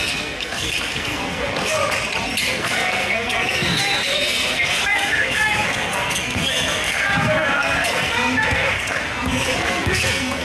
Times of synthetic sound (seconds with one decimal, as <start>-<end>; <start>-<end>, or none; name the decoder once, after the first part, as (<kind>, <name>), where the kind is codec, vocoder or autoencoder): 0.0-1.8 (codec, SNAC); 2.4-10.4